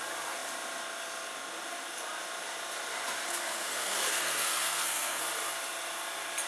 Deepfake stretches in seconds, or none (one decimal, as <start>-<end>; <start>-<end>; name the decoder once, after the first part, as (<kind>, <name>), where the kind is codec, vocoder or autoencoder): 3.3-5.2 (codec, SNAC)